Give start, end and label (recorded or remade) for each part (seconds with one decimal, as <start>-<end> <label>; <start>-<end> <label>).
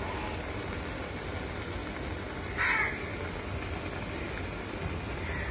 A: 0.0-5.5 recorded